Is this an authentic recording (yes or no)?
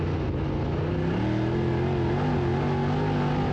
yes